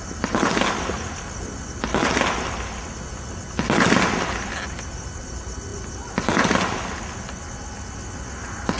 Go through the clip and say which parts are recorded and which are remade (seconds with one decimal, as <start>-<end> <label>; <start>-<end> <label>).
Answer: 0.0-8.8 recorded